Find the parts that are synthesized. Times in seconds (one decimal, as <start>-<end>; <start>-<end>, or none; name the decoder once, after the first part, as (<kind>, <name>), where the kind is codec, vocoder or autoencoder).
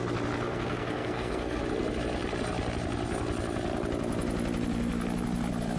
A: 0.5-1.6 (codec, SNAC)